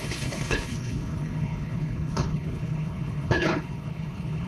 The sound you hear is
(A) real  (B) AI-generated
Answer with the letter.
B